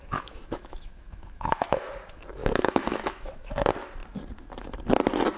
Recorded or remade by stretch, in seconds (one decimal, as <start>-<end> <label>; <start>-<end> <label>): 0.0-1.9 remade; 1.9-2.4 recorded; 2.4-3.5 remade; 3.5-5.4 recorded